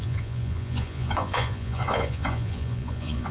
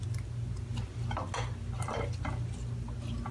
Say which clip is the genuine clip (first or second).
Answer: second